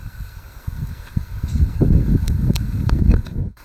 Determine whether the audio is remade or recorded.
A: remade